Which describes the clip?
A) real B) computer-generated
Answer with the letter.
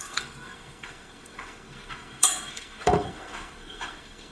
B